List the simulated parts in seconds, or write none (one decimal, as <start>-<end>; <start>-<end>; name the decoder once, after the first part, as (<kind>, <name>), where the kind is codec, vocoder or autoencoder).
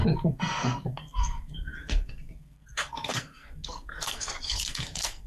0.0-5.3 (codec, SNAC)